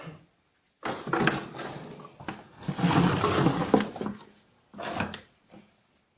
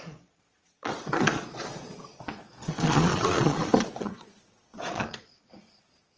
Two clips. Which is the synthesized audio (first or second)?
second